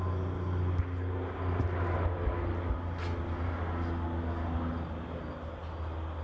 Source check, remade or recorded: recorded